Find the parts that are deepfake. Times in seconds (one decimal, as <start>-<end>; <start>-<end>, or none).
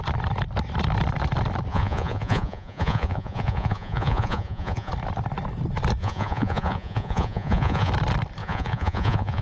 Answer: 1.7-4.9; 6.0-7.9; 8.4-9.4